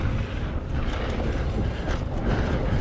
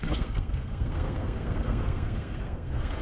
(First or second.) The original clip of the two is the first